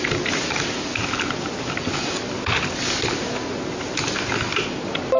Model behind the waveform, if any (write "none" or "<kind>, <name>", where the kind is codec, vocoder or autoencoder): none